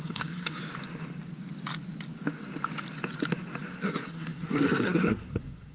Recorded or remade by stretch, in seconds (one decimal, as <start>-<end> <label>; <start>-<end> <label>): 0.0-0.6 remade; 0.6-3.7 recorded; 3.7-5.7 remade